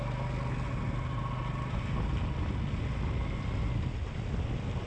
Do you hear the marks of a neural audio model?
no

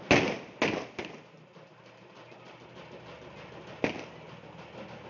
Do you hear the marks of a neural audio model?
no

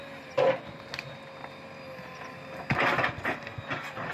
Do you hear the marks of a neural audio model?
no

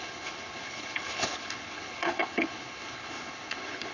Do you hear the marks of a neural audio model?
yes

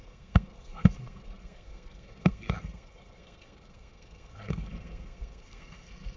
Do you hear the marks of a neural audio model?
yes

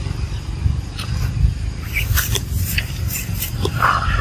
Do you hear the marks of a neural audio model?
no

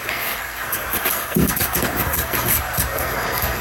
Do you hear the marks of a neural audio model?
yes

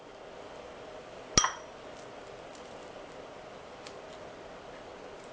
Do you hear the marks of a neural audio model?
no